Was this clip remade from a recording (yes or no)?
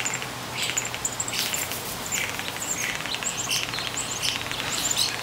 no